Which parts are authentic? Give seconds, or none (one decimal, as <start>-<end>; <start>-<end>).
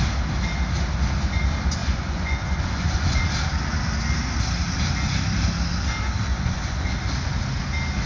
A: 0.0-1.8; 3.2-6.3; 6.9-8.1